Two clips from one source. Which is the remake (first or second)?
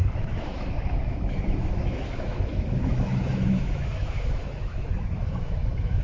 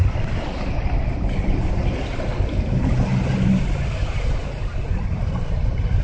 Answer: first